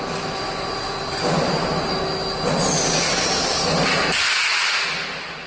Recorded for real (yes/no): yes